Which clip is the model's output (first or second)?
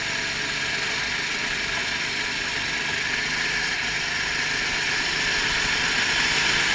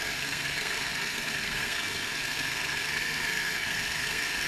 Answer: second